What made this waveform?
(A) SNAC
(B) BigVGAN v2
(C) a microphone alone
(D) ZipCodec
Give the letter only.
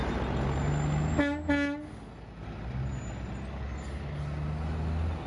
C